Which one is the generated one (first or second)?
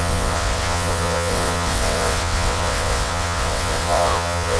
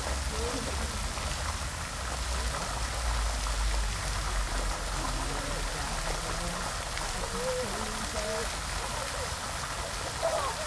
first